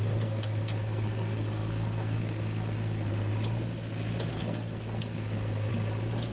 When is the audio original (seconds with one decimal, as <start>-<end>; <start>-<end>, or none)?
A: 3.3-4.3; 5.7-6.3